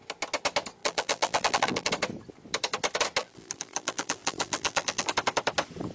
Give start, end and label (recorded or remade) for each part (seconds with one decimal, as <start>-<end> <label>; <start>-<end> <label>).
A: 0.0-0.8 recorded; 0.8-1.9 remade; 1.9-3.2 recorded; 3.2-5.1 remade; 5.1-5.9 recorded